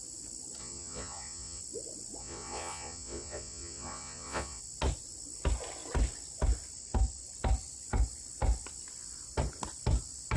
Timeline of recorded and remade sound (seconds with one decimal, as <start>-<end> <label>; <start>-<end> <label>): 0.0-0.6 recorded; 0.6-1.6 remade; 1.6-2.2 recorded; 2.2-4.6 remade; 4.6-10.4 recorded